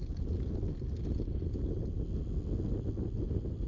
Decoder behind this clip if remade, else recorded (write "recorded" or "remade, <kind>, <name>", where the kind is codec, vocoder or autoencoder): recorded